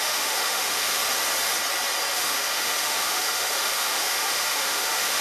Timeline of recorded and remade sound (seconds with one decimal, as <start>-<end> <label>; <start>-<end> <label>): 0.0-1.0 remade; 1.0-2.1 recorded; 2.1-5.2 remade